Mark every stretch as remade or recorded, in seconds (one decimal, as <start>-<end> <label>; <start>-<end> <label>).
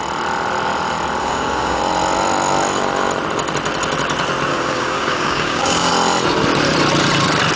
0.0-1.2 recorded; 1.2-1.8 remade; 1.8-4.5 recorded; 4.5-5.9 remade; 5.9-7.6 recorded